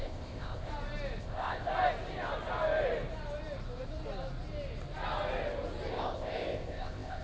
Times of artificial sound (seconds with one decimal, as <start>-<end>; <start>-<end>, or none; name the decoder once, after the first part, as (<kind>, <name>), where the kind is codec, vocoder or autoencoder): 0.0-0.7 (codec, ZipCodec); 1.2-1.7; 5.9-7.2